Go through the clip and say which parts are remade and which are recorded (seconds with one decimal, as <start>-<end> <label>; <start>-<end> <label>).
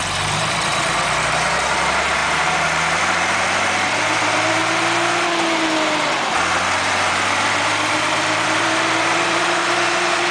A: 0.0-4.6 remade; 4.6-7.1 recorded; 7.1-10.3 remade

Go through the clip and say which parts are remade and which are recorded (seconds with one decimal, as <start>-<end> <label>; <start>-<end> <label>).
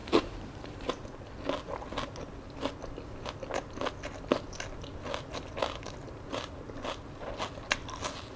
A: 0.0-0.9 remade; 0.9-6.0 recorded; 6.0-6.5 remade; 6.5-8.4 recorded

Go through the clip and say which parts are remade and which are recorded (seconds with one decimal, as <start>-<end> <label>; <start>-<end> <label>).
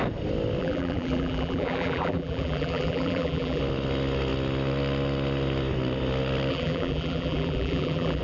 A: 0.0-0.6 recorded; 0.6-3.6 remade; 3.6-6.5 recorded; 6.5-8.2 remade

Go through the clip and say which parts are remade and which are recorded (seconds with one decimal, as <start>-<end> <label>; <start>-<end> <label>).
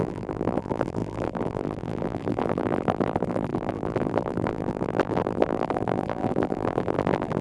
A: 0.0-7.4 remade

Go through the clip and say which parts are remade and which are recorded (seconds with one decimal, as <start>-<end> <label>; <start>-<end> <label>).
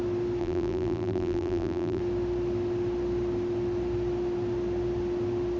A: 0.0-0.4 recorded; 0.4-2.0 remade; 2.0-5.6 recorded